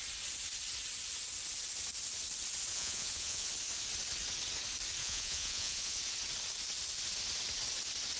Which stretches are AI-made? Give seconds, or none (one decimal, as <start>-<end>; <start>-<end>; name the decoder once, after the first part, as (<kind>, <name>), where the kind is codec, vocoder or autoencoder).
2.7-3.5 (vocoder, Vocos); 5.0-6.0